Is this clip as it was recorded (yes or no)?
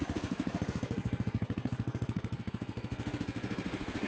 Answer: no